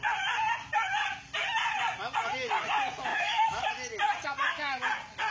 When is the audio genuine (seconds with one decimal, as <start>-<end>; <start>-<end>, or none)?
0.0-3.1; 3.7-5.3